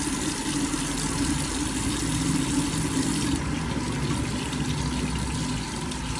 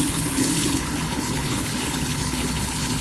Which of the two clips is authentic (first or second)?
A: first